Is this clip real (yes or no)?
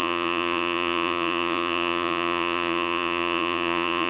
no